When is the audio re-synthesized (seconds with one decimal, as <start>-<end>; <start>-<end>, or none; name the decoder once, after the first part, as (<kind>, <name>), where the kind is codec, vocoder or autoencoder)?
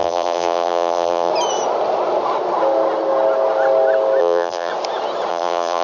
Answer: 0.0-1.3 (vocoder, BigVGAN v2); 4.2-4.7; 5.3-5.8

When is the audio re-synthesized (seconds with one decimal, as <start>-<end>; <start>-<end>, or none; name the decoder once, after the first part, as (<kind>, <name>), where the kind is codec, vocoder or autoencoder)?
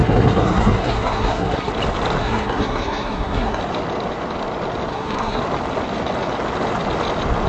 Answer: 0.0-1.7 (codec, SNAC); 2.2-3.6; 4.9-5.4